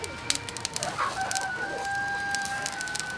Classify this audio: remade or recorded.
recorded